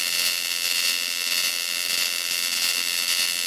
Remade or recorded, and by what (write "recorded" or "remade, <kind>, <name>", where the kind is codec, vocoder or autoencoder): remade, vocoder, BigVGAN v2